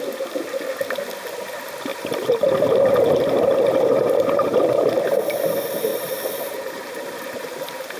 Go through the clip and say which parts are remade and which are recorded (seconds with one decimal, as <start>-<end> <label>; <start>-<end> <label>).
0.0-1.9 recorded; 1.9-4.9 remade; 4.9-5.9 recorded; 5.9-8.0 remade